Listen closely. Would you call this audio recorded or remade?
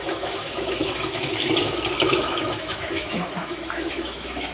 remade